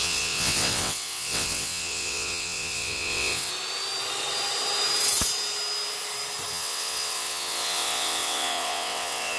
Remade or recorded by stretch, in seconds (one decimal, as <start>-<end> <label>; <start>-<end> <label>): 0.0-3.5 remade; 3.5-6.5 recorded; 6.5-9.4 remade